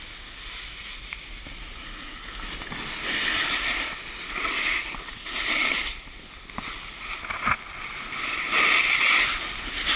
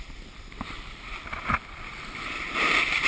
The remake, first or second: second